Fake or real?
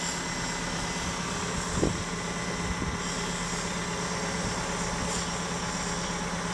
real